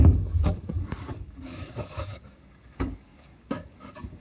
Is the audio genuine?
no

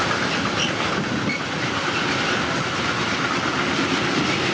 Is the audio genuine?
yes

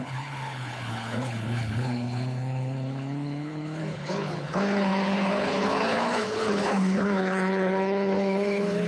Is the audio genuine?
no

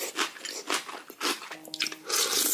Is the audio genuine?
yes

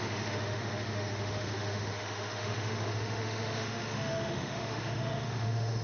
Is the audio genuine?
no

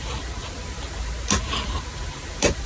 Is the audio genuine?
yes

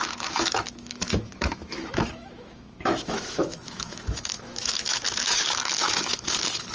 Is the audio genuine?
no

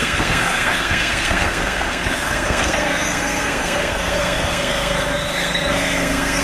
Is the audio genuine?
no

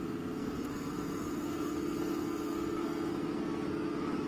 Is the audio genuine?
no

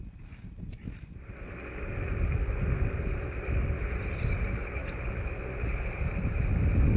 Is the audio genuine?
yes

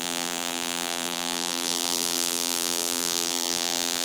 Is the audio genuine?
no